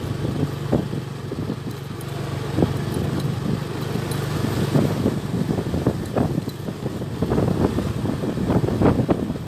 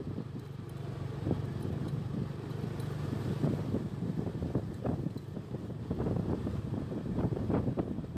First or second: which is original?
first